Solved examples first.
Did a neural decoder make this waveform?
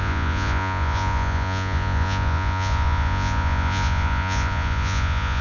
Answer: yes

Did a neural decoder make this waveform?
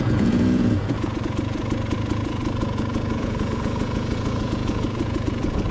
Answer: yes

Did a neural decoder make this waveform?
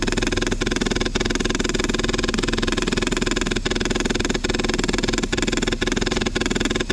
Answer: no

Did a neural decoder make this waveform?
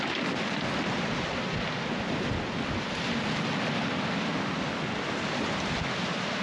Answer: no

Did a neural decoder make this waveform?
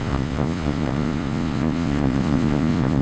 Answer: yes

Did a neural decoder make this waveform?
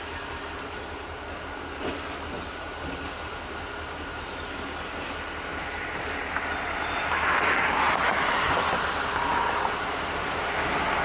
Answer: no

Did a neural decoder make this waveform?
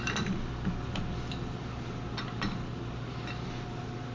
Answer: no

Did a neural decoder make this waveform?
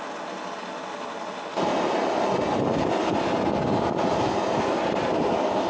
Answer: no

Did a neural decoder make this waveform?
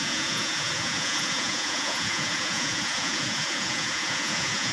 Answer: yes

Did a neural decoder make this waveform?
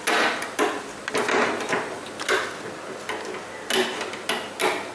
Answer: no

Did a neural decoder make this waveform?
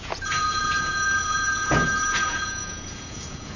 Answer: yes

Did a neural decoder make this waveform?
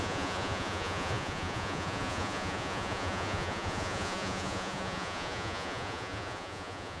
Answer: yes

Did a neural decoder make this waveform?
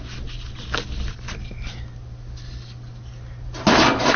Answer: no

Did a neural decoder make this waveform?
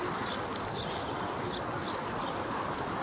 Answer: no